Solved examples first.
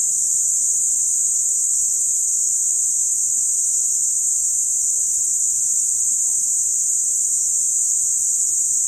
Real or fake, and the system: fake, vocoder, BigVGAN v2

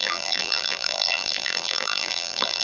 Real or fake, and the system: fake, vocoder, BigVGAN v2